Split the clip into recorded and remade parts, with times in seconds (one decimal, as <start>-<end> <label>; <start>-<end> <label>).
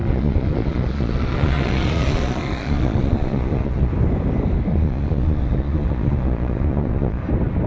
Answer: 0.0-3.9 remade; 3.9-4.7 recorded; 4.7-7.2 remade; 7.2-7.7 recorded